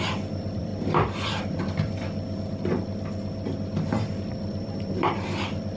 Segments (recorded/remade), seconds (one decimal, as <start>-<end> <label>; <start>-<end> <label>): 0.0-0.7 remade; 0.7-4.2 recorded; 4.2-5.8 remade